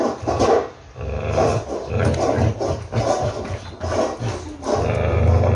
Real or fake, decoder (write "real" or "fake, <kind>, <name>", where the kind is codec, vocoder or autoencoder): real